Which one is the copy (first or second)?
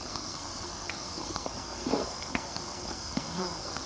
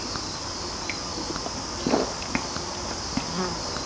first